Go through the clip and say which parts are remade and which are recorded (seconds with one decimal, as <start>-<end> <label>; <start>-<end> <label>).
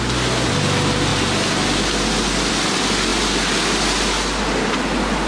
0.0-5.3 recorded